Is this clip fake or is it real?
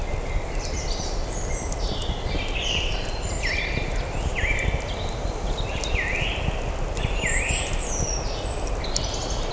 real